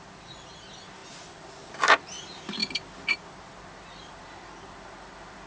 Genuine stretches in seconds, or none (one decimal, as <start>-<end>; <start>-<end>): 0.0-5.5